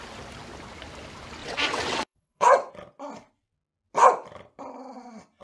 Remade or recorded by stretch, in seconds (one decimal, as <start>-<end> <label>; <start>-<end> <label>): 0.0-1.4 recorded; 1.4-2.7 remade; 2.7-5.4 recorded